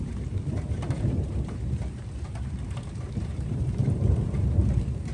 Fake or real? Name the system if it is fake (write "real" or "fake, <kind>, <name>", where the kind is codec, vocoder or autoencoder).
fake, vocoder, BigVGAN v2